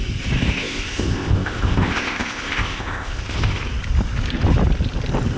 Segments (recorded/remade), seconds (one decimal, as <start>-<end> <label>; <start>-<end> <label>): 0.0-0.4 recorded; 0.4-3.6 remade; 3.6-5.4 recorded